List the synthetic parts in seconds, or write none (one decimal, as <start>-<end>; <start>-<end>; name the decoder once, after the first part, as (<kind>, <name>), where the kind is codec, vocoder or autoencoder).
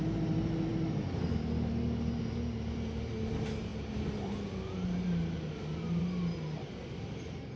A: none